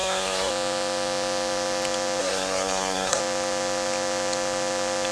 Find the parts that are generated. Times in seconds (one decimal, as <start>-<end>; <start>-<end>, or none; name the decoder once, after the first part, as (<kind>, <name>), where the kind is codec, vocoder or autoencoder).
0.0-0.5 (codec, SNAC); 2.2-3.2